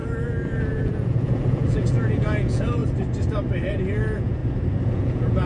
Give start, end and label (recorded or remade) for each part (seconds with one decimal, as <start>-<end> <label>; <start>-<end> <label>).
0.0-2.8 remade; 2.8-3.7 recorded; 3.7-4.4 remade; 4.4-4.9 recorded; 4.9-5.5 remade